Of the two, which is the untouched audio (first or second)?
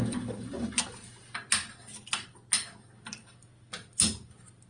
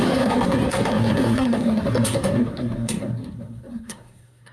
first